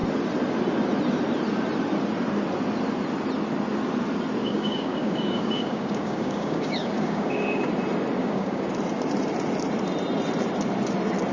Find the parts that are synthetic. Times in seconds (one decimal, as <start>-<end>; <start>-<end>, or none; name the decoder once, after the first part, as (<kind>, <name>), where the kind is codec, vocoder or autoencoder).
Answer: 4.4-7.7 (codec, DAC); 8.2-8.7